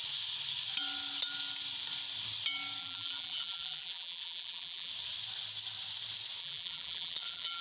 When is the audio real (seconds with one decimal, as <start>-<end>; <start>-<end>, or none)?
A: 0.0-2.8; 4.9-6.4